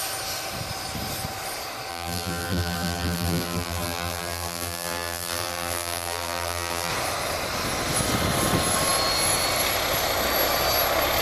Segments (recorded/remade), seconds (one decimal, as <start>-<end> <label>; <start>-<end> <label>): 0.0-1.9 recorded; 1.9-6.9 remade; 6.9-11.2 recorded